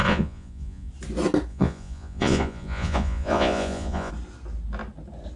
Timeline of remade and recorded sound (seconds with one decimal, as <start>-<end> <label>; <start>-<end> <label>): 0.0-0.9 remade; 0.9-1.5 recorded; 1.5-4.1 remade; 4.1-5.4 recorded